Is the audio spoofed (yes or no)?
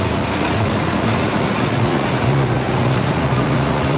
yes